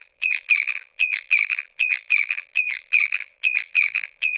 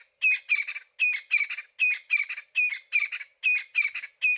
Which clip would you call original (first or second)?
second